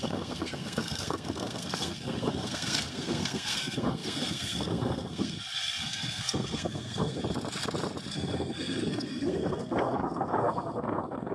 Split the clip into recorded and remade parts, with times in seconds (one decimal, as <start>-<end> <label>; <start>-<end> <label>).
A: 0.0-7.2 remade; 7.2-8.1 recorded; 8.1-11.3 remade